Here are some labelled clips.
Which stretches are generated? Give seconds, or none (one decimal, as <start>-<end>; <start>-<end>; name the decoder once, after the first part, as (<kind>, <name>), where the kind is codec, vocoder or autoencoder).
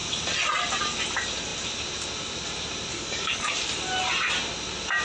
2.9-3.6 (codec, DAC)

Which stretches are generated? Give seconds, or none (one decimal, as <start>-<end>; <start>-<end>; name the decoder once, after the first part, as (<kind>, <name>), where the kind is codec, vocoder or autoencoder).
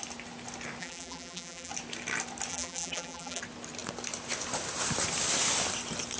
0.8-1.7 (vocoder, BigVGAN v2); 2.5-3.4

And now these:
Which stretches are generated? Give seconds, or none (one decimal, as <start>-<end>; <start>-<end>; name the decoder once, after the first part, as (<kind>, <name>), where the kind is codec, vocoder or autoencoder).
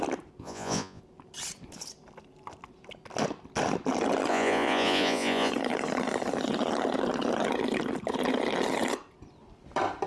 0.4-1.0 (vocoder, Vocos); 4.3-5.5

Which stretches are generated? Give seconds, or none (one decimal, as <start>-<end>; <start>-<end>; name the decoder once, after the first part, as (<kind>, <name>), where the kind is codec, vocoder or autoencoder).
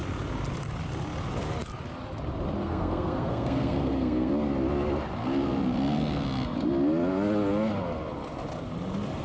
2.6-4.3 (codec, SNAC)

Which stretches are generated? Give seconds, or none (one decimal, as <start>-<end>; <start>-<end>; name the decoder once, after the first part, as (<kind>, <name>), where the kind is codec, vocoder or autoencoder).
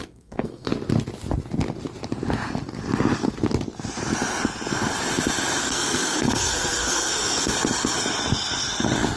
0.0-0.7 (codec, SNAC); 5.6-7.5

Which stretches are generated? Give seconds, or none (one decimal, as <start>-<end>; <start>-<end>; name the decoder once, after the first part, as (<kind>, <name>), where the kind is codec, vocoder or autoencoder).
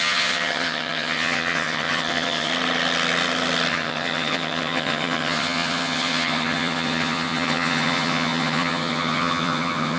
0.0-2.5 (vocoder, HiFi-GAN); 3.7-10.0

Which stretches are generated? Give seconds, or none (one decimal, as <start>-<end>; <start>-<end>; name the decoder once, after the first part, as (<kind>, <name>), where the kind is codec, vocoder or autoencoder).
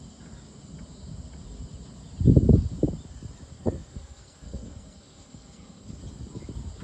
3.5-6.0 (codec, SNAC)